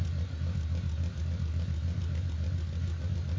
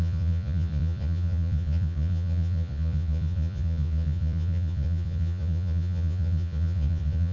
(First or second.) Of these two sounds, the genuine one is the first